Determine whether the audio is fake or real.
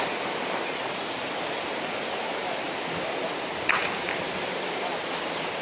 real